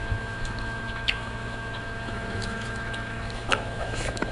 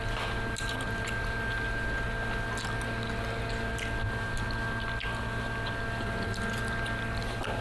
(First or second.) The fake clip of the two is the first